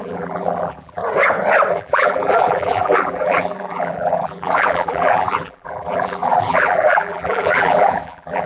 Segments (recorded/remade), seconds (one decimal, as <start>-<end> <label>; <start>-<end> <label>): 0.0-1.0 remade; 1.0-1.7 recorded; 1.7-8.5 remade